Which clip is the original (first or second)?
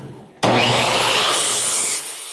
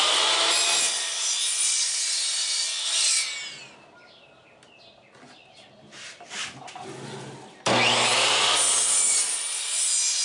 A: second